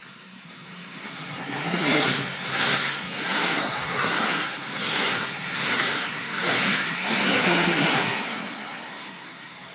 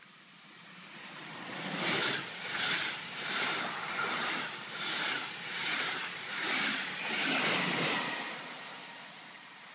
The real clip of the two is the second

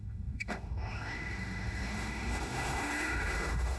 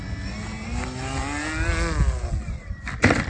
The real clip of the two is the second